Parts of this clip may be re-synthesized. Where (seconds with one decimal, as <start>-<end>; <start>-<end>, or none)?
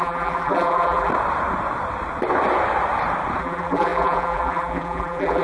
0.0-1.1; 3.4-5.4